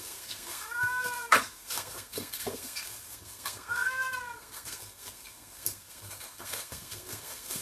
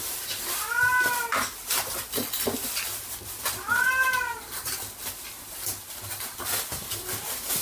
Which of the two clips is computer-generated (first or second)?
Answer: first